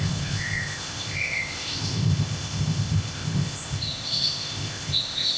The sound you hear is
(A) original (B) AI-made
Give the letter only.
B